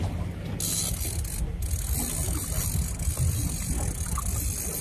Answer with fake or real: real